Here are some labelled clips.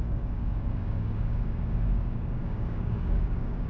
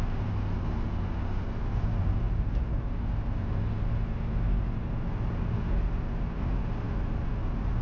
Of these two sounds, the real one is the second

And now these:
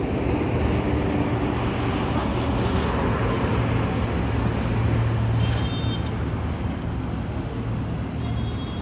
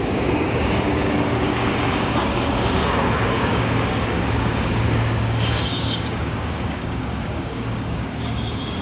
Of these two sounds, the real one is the first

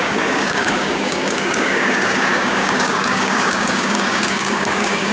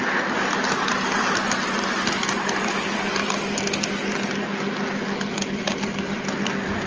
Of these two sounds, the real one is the second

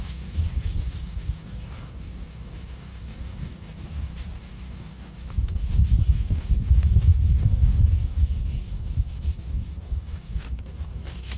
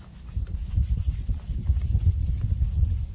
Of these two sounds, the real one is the second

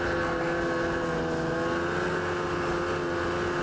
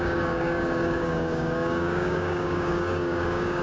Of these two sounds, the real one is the first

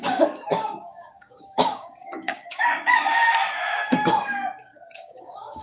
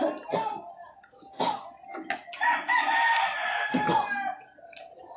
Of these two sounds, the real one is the second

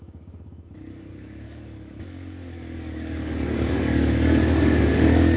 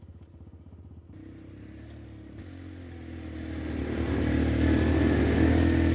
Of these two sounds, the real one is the second